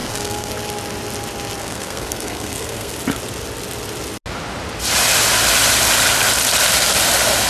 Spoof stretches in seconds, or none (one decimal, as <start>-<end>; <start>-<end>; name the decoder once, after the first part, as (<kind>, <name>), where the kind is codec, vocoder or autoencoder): 0.0-0.5 (codec, SNAC); 1.6-2.9